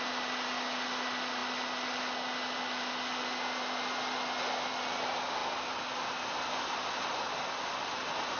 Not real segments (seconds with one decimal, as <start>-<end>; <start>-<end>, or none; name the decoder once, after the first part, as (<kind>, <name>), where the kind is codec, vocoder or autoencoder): none

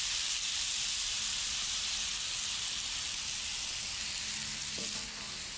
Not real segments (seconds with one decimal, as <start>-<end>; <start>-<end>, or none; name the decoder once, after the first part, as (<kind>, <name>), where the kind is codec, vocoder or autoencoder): 0.0-2.1 (vocoder, BigVGAN v2)

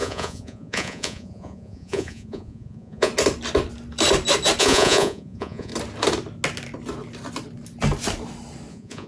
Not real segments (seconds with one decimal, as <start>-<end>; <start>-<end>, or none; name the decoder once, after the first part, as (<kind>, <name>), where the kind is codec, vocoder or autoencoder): 0.0-3.1 (vocoder, Vocos); 4.6-5.7; 8.7-9.1

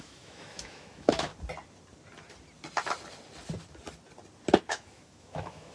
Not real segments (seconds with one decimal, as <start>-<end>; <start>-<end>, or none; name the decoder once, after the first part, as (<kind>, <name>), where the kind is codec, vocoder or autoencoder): 0.0-1.3 (autoencoder, DAC-VAE); 4.7-5.7

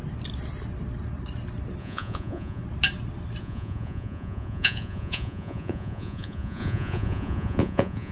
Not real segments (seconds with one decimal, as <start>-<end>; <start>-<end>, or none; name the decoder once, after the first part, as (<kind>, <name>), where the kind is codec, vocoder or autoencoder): 1.8-2.6 (vocoder, Vocos); 3.4-8.1

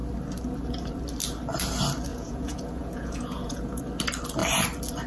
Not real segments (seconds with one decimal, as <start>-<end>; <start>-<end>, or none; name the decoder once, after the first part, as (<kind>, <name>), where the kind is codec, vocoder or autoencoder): 2.1-3.8 (vocoder, Vocos)